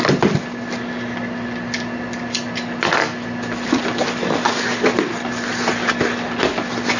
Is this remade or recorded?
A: recorded